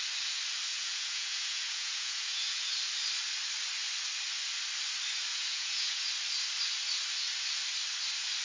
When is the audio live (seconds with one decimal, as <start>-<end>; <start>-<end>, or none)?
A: 0.0-0.7; 2.7-5.3; 6.1-8.4